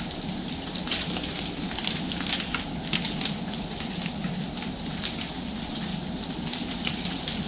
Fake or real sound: real